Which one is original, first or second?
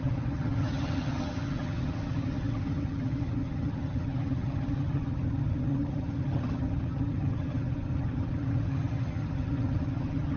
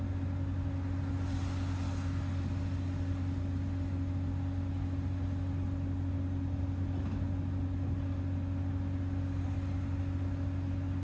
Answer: second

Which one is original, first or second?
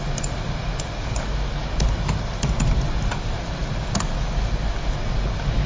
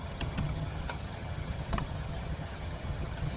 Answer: first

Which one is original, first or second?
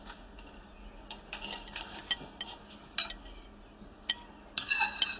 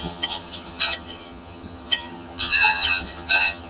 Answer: first